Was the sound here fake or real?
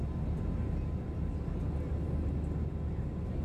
real